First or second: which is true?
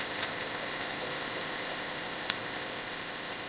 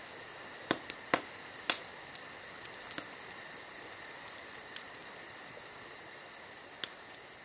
second